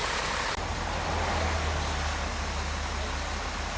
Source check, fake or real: real